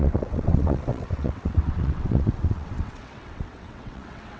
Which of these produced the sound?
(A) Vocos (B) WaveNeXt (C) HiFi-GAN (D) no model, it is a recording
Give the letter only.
B